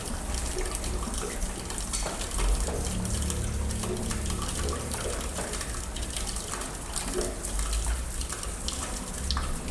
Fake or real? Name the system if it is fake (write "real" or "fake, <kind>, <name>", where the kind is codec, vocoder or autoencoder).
real